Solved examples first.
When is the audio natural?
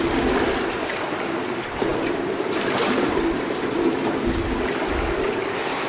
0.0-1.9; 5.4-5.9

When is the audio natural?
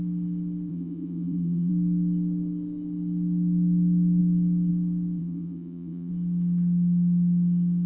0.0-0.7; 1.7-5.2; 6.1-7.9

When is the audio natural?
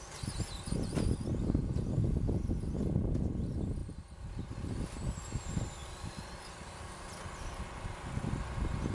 0.0-5.8; 7.2-8.9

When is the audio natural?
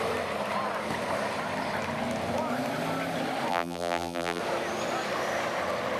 0.0-3.5; 4.4-6.0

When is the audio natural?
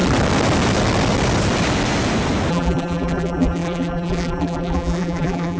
0.0-2.5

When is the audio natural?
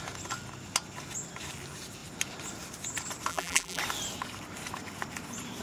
0.0-3.3; 3.8-5.6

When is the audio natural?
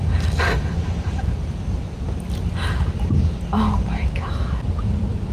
1.6-4.8